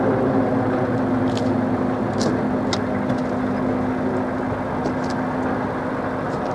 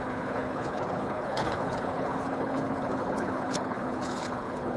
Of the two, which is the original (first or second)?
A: first